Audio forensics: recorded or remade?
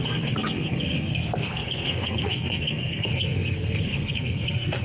remade